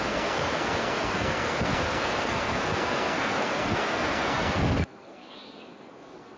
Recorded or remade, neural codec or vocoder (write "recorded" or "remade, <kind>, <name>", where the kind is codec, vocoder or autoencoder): remade, codec, SNAC